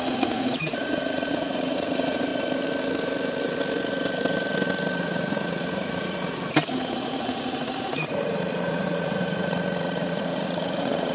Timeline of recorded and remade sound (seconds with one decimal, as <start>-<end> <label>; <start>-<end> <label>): 0.0-2.3 remade; 2.3-5.0 recorded; 5.0-11.1 remade